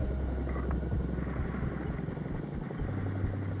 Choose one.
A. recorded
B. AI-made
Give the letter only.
A